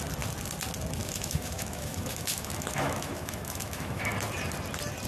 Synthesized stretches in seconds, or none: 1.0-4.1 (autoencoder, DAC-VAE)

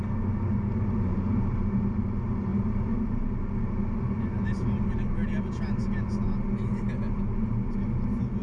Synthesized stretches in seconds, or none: none

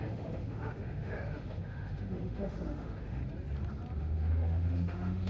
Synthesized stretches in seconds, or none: 0.0-3.2 (autoencoder, DAC-VAE); 4.0-5.3

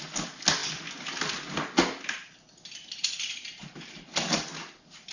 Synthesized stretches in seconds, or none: none

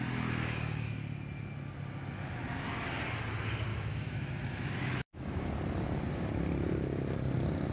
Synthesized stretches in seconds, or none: 3.7-5.5 (autoencoder, DAC-VAE)

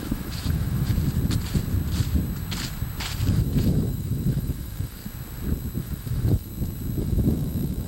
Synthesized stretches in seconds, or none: 0.0-0.9 (autoencoder, DAC-VAE); 3.3-5.0; 5.8-6.5; 7.0-7.9

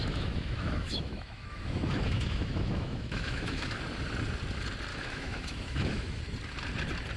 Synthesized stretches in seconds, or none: 0.0-3.8 (autoencoder, DAC-VAE); 4.9-6.2